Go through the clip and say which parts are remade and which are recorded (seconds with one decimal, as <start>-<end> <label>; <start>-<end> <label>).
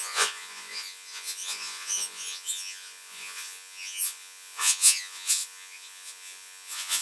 0.0-7.0 remade